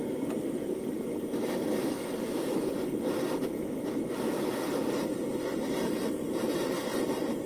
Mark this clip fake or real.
real